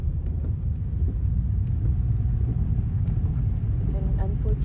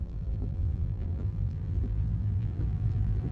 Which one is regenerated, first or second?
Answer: second